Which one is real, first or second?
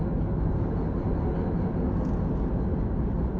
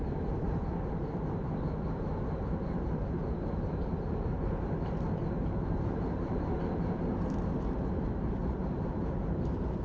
first